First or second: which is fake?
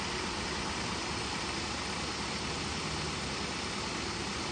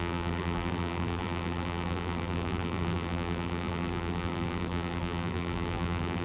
second